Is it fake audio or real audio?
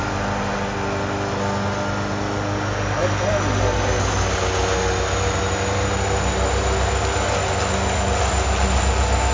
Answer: real